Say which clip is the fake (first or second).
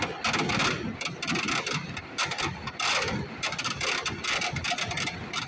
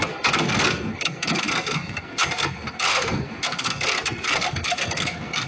second